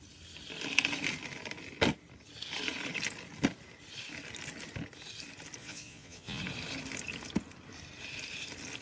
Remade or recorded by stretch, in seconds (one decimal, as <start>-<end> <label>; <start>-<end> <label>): 0.0-5.6 recorded; 5.6-6.4 remade; 6.4-8.8 recorded